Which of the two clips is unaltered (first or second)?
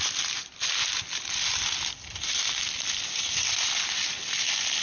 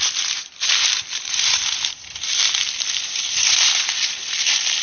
first